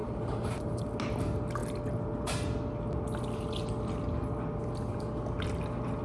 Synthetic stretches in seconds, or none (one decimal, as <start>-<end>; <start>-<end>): 0.0-0.9